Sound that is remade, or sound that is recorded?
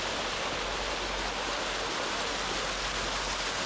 recorded